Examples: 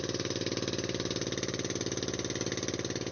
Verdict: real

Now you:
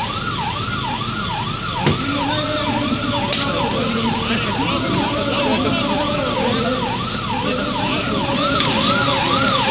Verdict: real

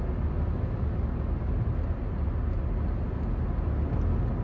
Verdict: real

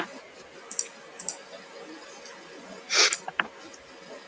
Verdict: real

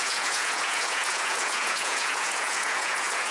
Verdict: fake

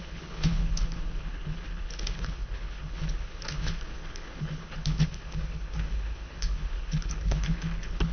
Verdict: fake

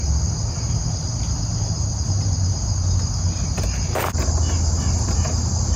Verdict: real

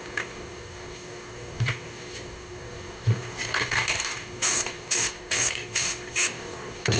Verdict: fake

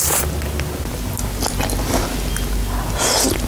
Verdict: real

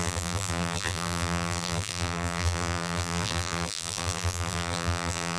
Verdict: fake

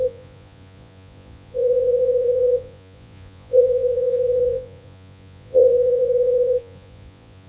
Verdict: fake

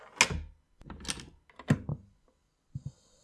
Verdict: real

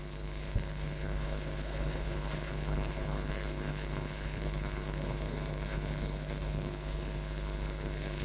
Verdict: fake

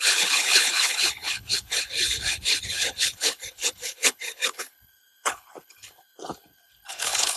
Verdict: fake